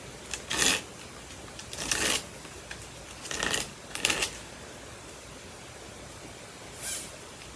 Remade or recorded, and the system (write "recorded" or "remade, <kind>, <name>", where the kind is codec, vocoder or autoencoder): recorded